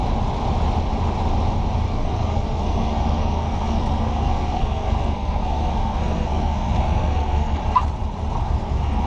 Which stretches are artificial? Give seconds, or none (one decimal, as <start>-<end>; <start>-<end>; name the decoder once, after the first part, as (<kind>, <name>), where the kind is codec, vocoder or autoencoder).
1.9-7.6 (codec, SNAC); 8.4-9.1